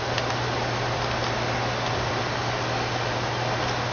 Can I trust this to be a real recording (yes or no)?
yes